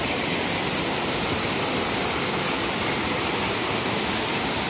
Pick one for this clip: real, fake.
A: real